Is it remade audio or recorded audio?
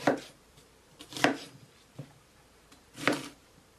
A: remade